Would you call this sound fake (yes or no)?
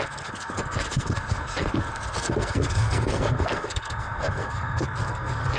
yes